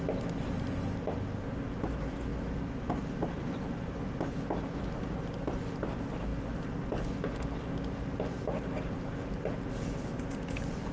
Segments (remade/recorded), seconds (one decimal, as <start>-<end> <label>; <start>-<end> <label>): 0.0-10.9 recorded